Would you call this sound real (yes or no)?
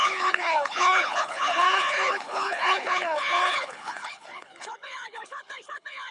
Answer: no